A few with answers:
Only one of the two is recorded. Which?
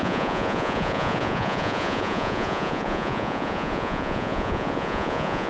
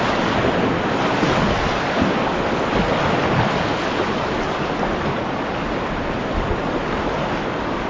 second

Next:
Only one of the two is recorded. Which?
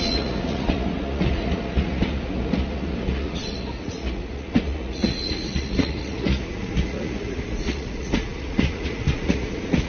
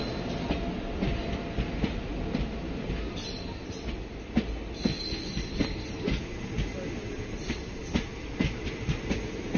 second